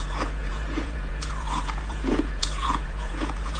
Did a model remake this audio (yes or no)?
yes